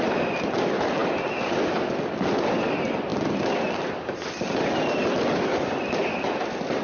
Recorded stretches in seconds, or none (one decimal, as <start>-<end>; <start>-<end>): 0.0-6.8